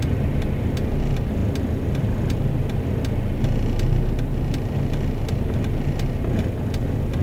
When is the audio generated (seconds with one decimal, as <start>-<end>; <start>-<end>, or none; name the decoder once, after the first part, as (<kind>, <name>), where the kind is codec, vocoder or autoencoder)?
none